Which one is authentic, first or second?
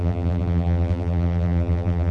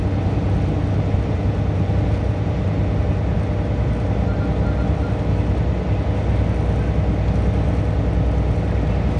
second